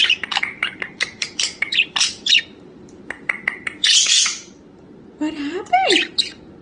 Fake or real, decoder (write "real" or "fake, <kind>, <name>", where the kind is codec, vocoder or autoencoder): fake, vocoder, BigVGAN v2